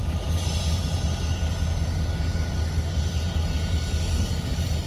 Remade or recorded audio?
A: recorded